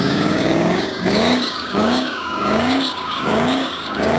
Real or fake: fake